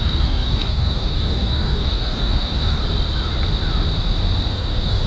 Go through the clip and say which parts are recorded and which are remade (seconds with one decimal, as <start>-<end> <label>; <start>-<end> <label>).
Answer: 0.0-2.8 remade; 2.8-4.5 recorded; 4.5-5.1 remade